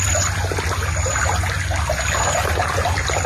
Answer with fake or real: real